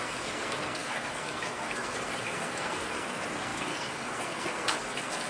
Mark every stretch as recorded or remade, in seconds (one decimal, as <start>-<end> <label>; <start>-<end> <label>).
0.0-5.3 remade